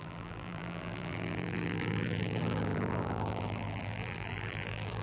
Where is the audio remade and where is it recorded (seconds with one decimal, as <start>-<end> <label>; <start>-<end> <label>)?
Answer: 0.0-5.0 remade

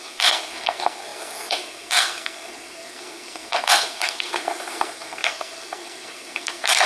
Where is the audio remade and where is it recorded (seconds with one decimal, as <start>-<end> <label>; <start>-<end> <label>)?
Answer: 0.0-6.9 remade

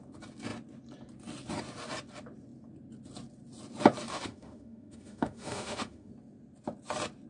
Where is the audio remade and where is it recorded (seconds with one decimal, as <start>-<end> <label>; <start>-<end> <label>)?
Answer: 0.0-4.1 recorded; 4.1-6.1 remade; 6.1-7.3 recorded

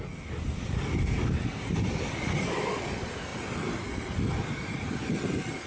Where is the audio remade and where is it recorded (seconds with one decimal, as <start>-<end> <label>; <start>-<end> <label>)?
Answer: 0.0-5.7 recorded

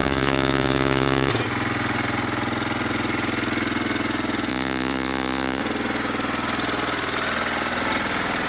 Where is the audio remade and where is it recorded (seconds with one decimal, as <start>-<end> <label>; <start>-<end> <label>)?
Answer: 0.0-1.3 remade; 1.3-4.5 recorded; 4.5-5.6 remade; 5.6-8.5 recorded

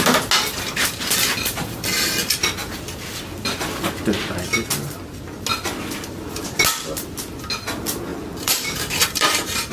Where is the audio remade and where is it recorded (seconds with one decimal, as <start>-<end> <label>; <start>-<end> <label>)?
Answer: 0.0-8.1 recorded; 8.1-9.7 remade